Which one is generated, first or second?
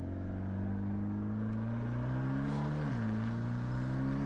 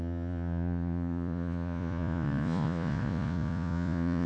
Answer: second